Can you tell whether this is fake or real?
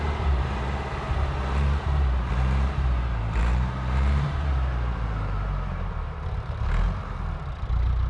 fake